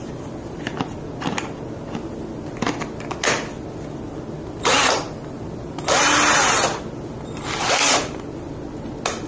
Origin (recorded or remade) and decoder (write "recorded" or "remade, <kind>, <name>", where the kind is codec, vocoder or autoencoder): recorded